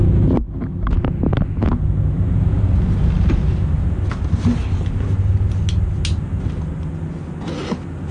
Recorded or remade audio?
recorded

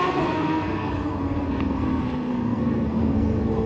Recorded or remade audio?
remade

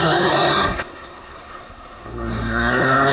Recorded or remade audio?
remade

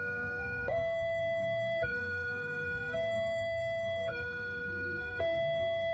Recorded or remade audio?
remade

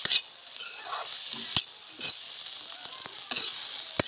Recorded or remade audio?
recorded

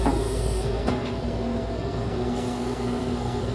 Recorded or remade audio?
remade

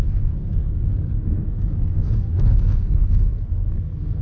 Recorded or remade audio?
remade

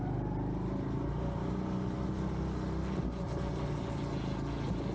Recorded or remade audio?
recorded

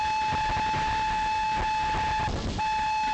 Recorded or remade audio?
recorded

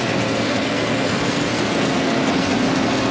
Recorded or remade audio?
remade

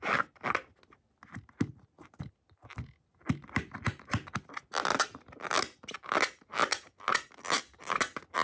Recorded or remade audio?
recorded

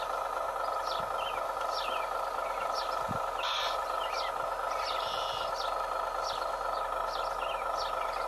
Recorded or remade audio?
recorded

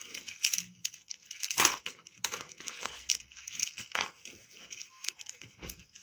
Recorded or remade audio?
remade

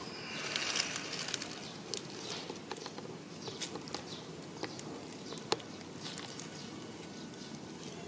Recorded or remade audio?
recorded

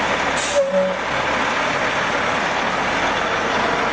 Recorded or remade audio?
recorded